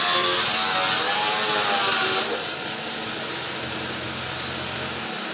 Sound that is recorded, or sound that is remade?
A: recorded